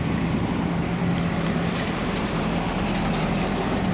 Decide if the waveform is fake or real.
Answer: fake